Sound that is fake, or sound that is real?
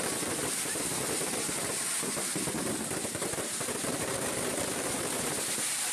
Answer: fake